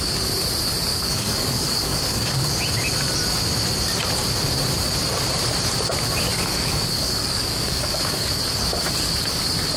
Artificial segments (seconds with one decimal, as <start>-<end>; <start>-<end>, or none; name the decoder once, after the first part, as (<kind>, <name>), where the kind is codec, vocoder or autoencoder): 0.9-2.5 (codec, DAC); 6.3-8.4